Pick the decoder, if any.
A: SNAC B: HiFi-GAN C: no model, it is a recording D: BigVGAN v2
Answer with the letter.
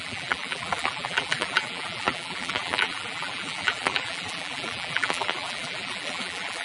D